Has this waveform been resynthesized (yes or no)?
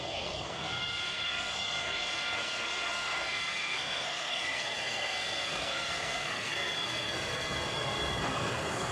yes